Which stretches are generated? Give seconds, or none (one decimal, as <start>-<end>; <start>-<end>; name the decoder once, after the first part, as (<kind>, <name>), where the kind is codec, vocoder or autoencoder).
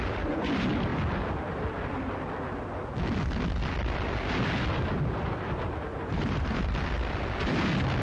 5.9-6.6 (vocoder, BigVGAN v2)